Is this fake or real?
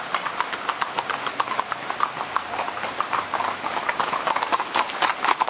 real